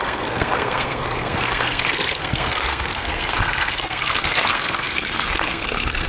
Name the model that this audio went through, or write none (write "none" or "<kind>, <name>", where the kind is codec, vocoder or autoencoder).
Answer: codec, SNAC